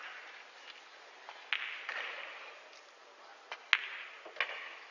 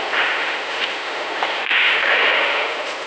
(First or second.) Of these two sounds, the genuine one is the first